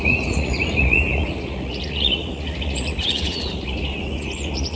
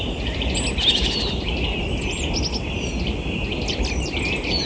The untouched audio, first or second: second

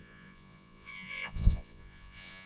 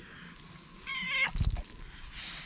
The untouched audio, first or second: second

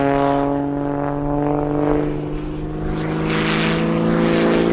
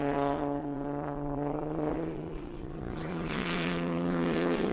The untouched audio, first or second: first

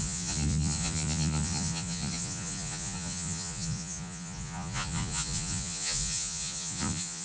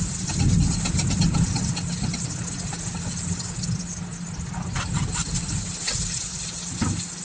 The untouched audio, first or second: second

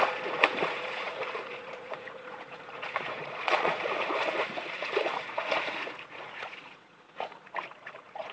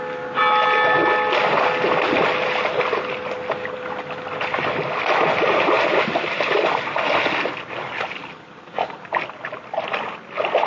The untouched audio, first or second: second